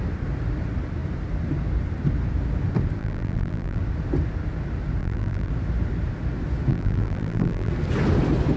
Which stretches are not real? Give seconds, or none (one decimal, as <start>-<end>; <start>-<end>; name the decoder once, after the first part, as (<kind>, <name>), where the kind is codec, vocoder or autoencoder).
3.0-3.8 (vocoder, BigVGAN v2); 5.0-5.5; 6.7-7.7

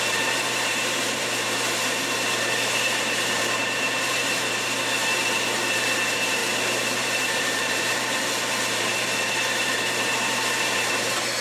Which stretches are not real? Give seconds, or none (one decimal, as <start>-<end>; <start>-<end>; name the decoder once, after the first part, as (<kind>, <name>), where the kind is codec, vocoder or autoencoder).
0.0-11.4 (vocoder, BigVGAN v2)